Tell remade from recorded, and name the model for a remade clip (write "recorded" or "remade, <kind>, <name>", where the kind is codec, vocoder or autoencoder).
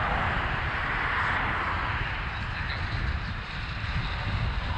recorded